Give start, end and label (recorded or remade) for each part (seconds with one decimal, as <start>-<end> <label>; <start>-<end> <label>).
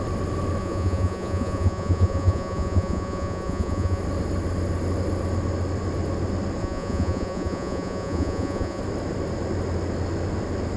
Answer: 0.0-0.6 recorded; 0.6-4.0 remade; 4.0-6.6 recorded; 6.6-8.8 remade; 8.8-10.8 recorded